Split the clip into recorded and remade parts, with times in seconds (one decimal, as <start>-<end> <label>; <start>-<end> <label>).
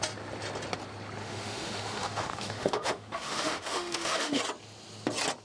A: 0.0-1.2 recorded; 1.2-4.4 remade; 4.4-5.4 recorded